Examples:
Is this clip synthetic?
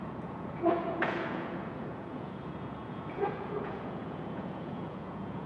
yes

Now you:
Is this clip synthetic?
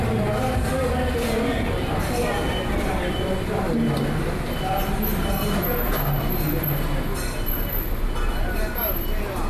no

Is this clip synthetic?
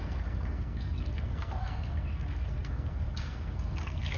yes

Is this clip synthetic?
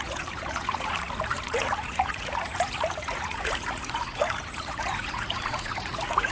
yes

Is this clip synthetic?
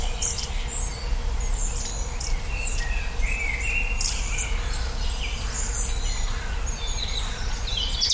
no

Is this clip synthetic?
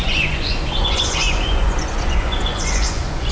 yes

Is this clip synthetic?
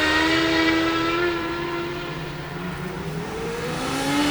yes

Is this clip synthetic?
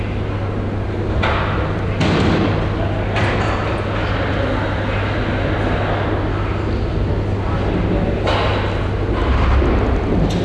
no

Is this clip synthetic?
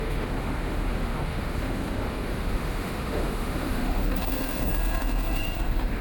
yes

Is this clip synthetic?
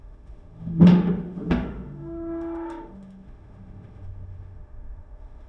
yes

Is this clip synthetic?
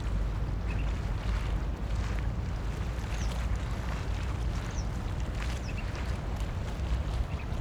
no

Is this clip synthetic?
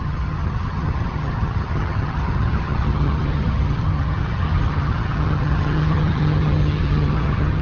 yes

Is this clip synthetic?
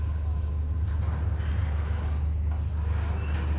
no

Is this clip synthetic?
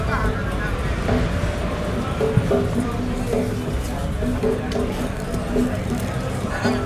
no